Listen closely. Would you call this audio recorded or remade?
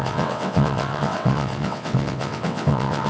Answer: remade